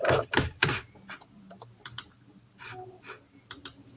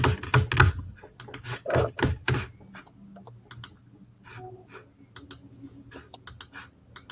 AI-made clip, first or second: first